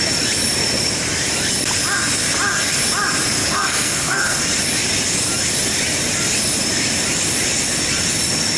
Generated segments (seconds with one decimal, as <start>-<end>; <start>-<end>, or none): 3.4-4.4